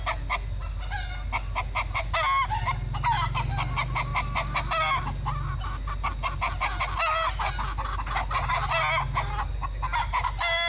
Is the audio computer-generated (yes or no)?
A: no